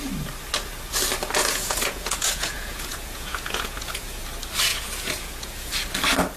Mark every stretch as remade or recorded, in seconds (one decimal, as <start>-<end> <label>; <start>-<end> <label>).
0.0-1.4 recorded; 1.4-4.2 remade; 4.2-4.7 recorded; 4.7-5.7 remade; 5.7-6.4 recorded